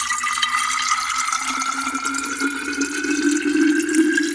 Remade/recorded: recorded